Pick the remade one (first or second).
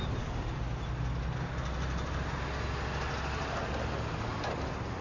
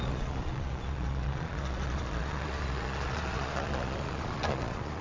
second